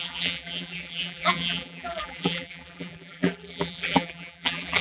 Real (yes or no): no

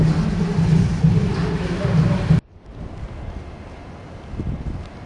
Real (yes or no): yes